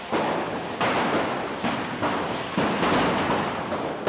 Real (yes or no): yes